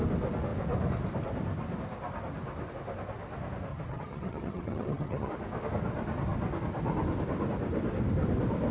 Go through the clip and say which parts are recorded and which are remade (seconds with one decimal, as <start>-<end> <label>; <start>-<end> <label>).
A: 0.0-3.7 recorded; 3.7-5.3 remade; 5.3-8.7 recorded